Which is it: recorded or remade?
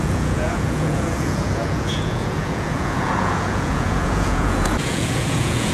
remade